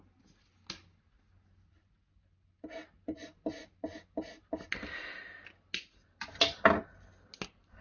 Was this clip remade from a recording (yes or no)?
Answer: no